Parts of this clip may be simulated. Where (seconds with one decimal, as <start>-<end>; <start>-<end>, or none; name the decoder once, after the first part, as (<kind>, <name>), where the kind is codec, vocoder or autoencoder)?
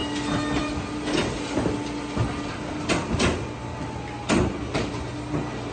none